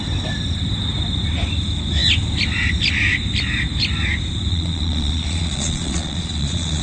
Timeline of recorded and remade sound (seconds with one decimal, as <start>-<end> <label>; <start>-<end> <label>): 0.0-4.5 recorded; 4.5-6.8 remade